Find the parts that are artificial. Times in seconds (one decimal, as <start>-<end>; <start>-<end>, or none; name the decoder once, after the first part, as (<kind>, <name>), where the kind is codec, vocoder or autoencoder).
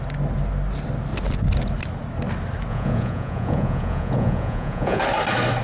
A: 2.7-5.0 (vocoder, Vocos)